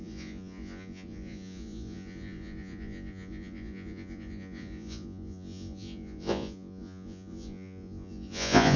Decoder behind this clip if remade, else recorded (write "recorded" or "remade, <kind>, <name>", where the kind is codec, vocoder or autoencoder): remade, vocoder, Vocos